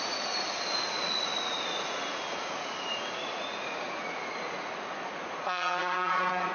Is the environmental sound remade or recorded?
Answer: remade